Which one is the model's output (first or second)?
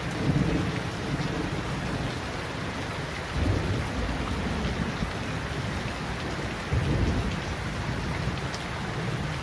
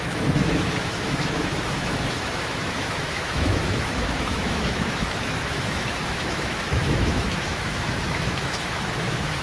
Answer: second